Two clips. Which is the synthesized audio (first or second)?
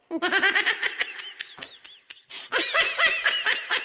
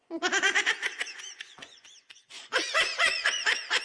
second